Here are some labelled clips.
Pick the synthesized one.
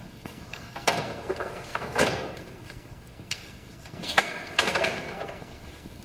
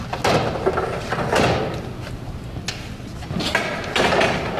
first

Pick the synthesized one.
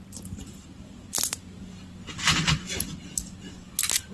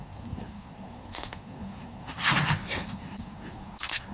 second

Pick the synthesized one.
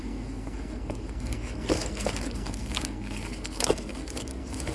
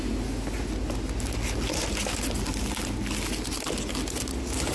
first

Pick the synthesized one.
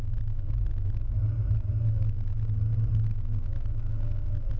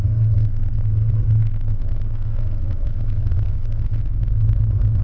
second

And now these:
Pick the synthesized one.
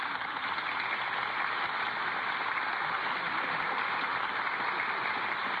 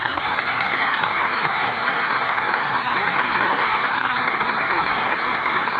second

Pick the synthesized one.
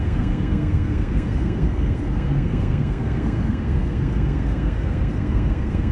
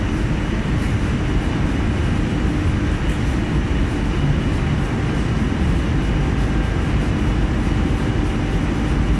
first